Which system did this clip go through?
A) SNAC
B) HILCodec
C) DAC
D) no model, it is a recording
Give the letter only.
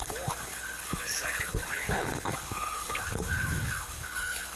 B